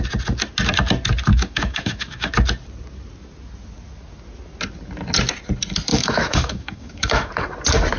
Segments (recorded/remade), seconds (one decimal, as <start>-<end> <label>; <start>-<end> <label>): 0.0-1.3 recorded; 1.3-2.3 remade; 2.3-5.9 recorded; 5.9-7.3 remade; 7.3-8.0 recorded